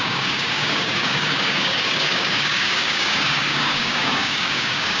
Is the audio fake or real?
fake